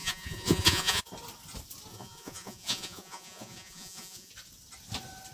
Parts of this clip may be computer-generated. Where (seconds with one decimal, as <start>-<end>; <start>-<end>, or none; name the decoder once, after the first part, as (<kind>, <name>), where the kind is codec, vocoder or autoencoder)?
0.0-1.1 (vocoder, Vocos); 1.9-4.3